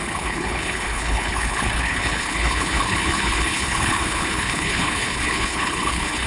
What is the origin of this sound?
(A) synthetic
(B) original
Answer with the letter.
A